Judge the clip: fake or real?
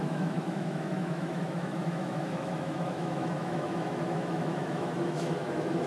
fake